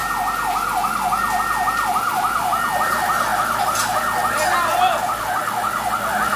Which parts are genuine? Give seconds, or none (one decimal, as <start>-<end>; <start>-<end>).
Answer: 0.0-6.4